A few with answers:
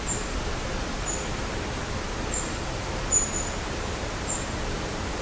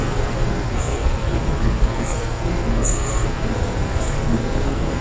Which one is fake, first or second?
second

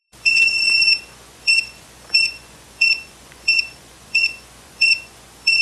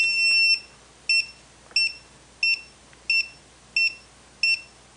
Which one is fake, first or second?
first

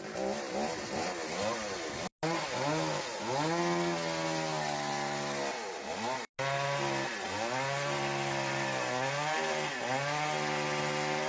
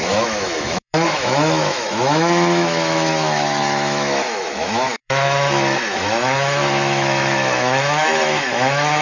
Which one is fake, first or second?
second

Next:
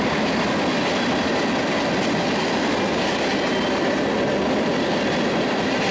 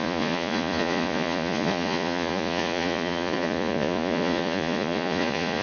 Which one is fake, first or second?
second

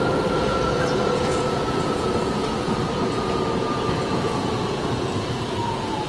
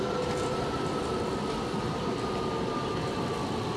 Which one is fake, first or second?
first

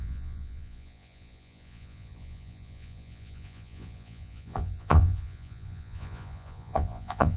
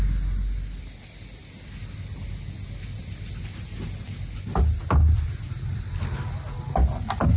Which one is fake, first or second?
first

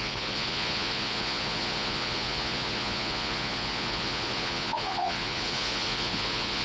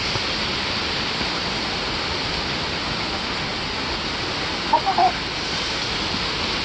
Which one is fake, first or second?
first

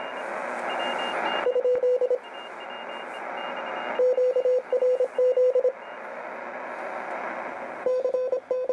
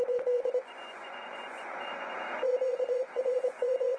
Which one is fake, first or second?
second